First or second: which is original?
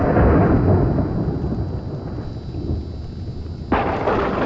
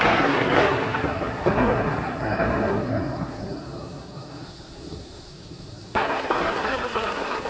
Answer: first